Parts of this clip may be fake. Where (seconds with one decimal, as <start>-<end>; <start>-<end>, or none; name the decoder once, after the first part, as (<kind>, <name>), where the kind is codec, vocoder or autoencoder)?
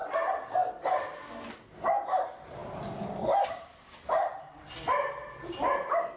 none